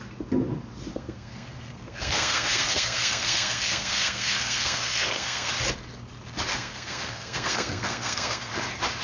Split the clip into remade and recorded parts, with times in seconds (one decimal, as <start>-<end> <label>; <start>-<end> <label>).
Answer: 0.0-0.9 recorded; 0.9-5.5 remade; 5.5-6.5 recorded; 6.5-8.5 remade; 8.5-9.0 recorded